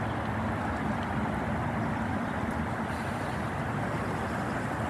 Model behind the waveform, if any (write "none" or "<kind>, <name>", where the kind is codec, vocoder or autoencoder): none